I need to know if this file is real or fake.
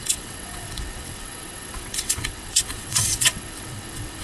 fake